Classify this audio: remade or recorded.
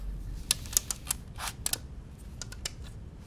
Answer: recorded